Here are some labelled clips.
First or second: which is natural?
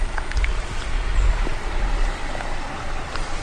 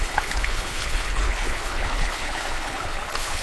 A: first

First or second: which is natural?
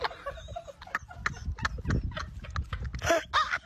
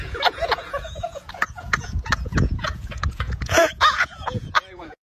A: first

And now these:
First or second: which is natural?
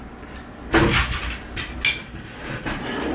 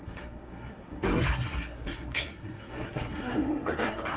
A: first